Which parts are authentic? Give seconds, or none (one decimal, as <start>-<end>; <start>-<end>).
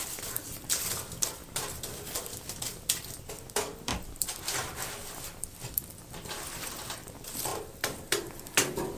0.0-9.0